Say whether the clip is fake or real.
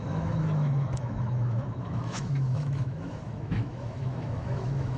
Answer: fake